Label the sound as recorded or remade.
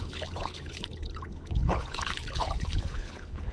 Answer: remade